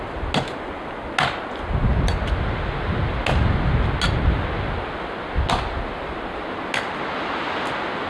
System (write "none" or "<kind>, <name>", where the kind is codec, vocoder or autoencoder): none